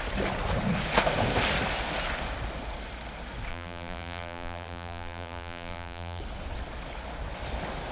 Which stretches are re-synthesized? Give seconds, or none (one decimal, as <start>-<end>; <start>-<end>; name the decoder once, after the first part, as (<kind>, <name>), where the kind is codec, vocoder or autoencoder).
3.5-6.2 (vocoder, BigVGAN v2)